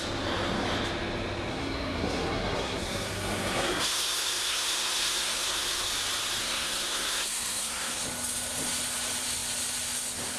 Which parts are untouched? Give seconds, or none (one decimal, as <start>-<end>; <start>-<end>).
0.0-1.5; 5.9-6.4; 8.0-10.4